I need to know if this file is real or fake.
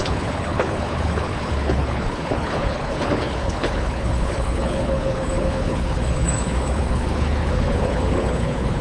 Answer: fake